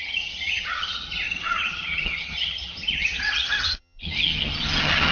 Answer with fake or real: fake